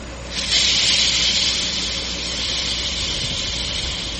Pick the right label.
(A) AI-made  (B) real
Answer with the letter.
B